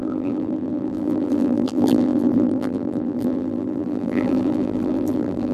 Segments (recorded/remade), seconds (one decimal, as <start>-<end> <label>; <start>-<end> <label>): 0.0-5.5 remade